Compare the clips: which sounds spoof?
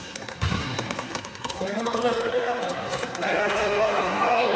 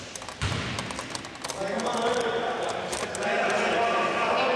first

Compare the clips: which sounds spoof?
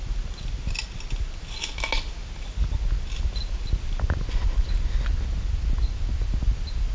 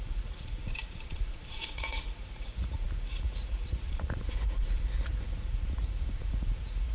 second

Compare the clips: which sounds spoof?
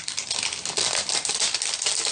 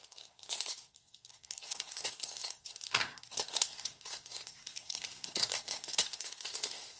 second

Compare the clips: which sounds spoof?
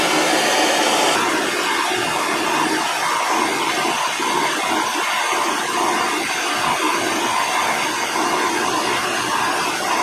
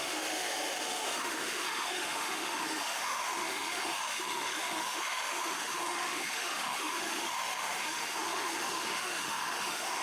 second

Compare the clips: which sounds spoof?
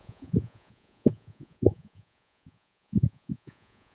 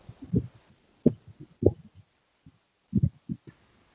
first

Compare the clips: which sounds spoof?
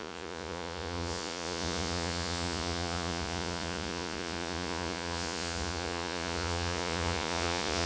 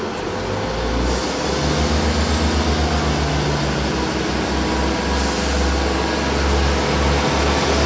first